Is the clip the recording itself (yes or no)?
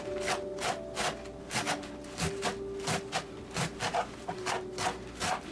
yes